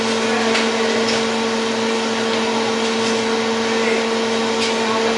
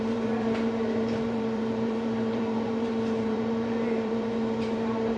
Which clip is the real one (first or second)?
first